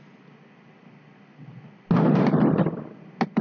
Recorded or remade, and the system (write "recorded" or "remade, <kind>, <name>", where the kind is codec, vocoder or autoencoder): recorded